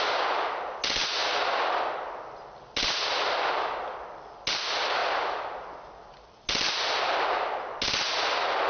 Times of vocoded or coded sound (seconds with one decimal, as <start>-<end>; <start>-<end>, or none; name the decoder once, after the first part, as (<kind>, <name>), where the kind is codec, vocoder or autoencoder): none